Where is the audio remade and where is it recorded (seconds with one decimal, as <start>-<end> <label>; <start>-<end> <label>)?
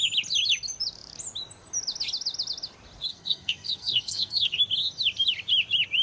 0.0-3.1 recorded; 3.1-4.6 remade; 4.6-6.0 recorded